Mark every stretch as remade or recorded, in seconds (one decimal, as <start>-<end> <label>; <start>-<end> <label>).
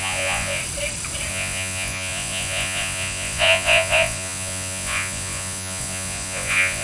0.0-0.6 remade; 0.6-1.3 recorded; 1.3-6.8 remade